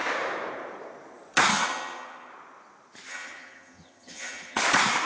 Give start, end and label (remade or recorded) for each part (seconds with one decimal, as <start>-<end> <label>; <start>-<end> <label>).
0.0-1.5 recorded; 1.5-2.3 remade; 2.3-3.1 recorded; 3.1-4.6 remade; 4.6-5.1 recorded